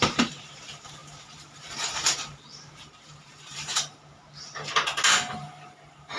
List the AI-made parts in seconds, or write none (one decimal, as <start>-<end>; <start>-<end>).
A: 0.0-4.2; 5.3-6.2